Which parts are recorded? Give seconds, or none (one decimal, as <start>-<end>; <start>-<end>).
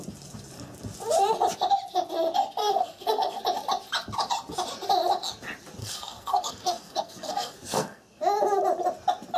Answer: 0.0-2.6; 3.4-5.8; 8.2-9.4